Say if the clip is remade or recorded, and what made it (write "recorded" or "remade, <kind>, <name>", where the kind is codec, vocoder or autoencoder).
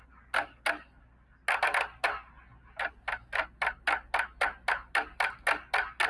recorded